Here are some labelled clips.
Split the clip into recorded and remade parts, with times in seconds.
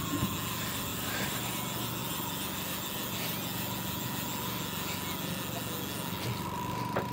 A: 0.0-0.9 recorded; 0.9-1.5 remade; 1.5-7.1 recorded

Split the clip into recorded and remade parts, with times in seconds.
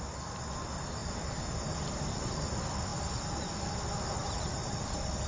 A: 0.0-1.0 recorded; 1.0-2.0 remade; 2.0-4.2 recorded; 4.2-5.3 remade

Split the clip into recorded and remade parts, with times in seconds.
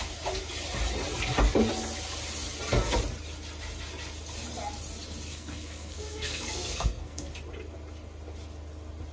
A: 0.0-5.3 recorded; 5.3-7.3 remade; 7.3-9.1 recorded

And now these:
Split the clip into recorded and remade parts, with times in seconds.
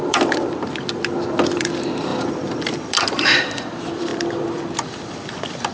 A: 0.0-5.7 remade